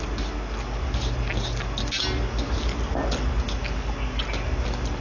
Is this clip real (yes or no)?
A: yes